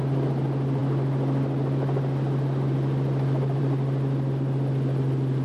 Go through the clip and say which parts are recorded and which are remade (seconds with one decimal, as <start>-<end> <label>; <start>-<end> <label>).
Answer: 0.0-5.4 recorded